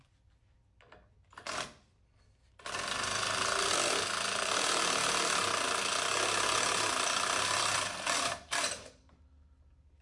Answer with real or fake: real